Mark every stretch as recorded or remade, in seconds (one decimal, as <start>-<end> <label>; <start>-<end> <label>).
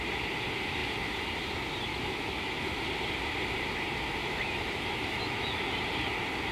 0.0-1.9 recorded; 1.9-2.8 remade; 2.8-4.2 recorded; 4.2-5.6 remade; 5.6-6.5 recorded